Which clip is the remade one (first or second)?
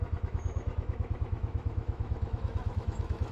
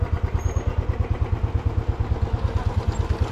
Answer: first